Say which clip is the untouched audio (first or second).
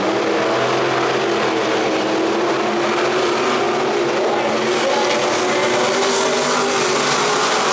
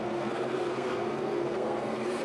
first